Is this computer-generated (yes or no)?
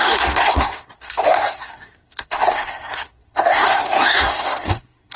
yes